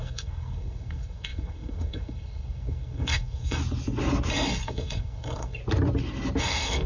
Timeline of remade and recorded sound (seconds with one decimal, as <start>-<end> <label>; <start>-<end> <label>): 0.0-3.6 remade; 3.6-4.3 recorded; 4.3-5.6 remade; 5.6-6.4 recorded; 6.4-6.9 remade